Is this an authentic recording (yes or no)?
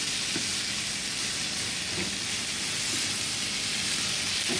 yes